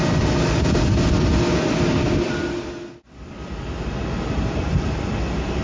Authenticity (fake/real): real